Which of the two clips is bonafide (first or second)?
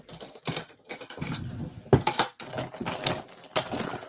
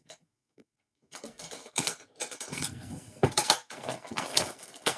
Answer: first